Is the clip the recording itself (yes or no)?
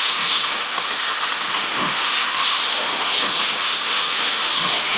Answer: no